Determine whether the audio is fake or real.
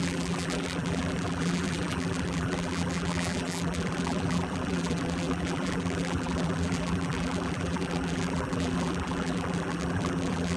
fake